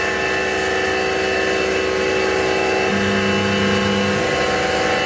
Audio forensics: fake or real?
real